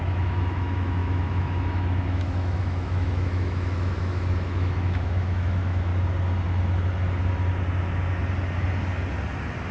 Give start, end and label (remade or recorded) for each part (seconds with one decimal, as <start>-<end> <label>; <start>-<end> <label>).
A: 0.0-5.9 remade; 5.9-9.7 recorded